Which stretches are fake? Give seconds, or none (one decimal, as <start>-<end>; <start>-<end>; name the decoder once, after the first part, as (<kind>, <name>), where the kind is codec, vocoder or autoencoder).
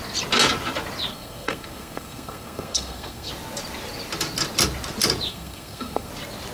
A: 1.1-3.3 (codec, SNAC); 5.3-6.1